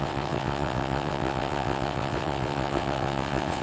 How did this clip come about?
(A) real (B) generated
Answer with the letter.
B